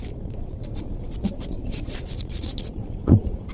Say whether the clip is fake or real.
fake